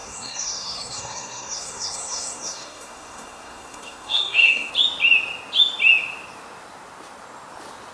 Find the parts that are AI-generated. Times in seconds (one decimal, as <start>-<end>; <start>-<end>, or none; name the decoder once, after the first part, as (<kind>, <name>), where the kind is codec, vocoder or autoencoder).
0.0-4.7 (codec, SNAC)